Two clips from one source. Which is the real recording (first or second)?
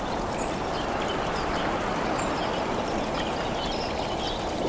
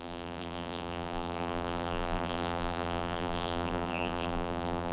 first